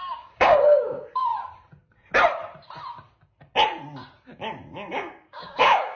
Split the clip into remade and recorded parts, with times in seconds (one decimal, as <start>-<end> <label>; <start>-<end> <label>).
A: 0.0-1.3 remade; 1.3-4.9 recorded; 4.9-6.0 remade